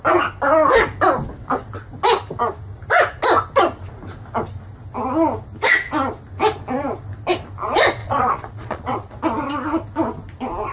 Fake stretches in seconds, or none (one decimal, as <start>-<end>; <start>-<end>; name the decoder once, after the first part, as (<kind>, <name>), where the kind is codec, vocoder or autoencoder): 8.0-9.1 (vocoder, Vocos)